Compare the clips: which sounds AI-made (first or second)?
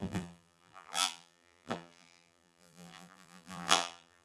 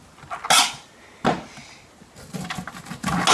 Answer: first